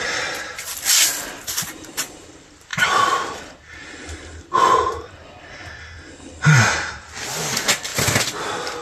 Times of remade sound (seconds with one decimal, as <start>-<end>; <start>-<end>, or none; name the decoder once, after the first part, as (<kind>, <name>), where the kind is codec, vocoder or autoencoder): 2.7-3.5 (vocoder, BigVGAN v2)